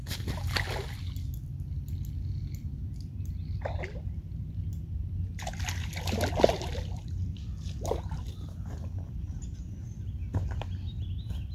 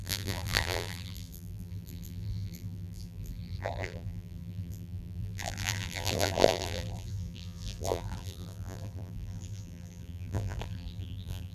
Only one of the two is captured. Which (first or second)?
first